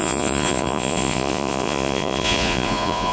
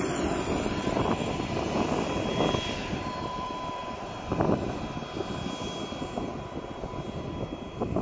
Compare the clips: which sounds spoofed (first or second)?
first